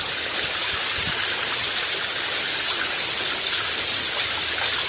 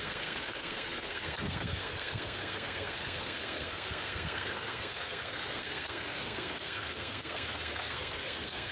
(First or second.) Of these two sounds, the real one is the first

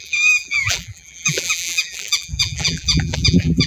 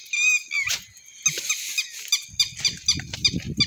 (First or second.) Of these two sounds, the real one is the second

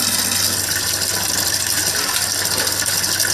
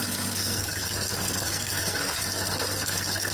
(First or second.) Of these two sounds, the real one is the first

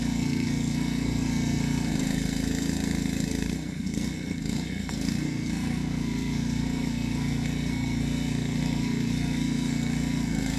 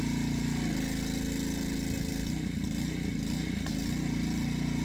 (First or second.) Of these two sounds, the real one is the second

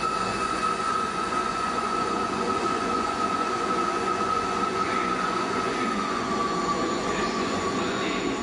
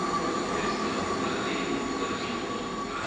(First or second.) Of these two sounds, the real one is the second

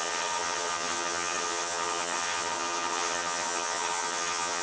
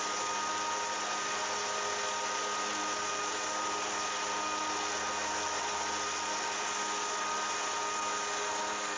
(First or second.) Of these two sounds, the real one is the second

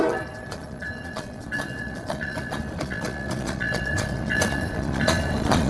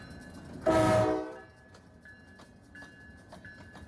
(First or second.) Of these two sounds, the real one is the second